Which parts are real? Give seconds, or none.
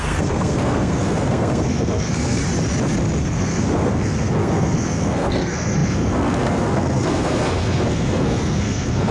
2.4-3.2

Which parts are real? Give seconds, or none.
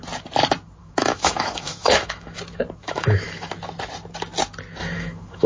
0.0-0.8; 2.4-2.8; 3.5-4.8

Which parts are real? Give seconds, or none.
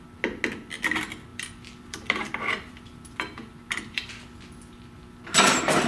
0.0-1.3; 4.1-5.9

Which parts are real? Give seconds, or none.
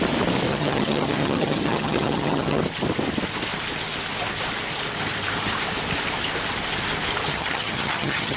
0.0-0.5; 2.6-7.3